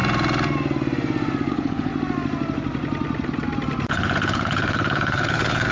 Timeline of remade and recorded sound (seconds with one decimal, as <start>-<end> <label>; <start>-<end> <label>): 0.0-1.5 recorded; 1.5-1.9 remade; 1.9-3.9 recorded; 3.9-5.7 remade